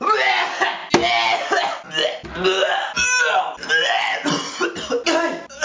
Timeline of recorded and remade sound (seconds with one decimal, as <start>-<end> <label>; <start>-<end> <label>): 0.0-5.6 recorded